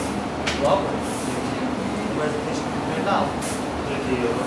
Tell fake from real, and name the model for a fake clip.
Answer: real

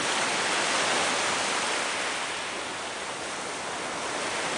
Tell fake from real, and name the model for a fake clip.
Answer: real